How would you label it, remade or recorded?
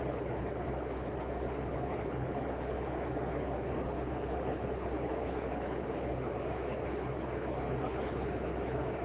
remade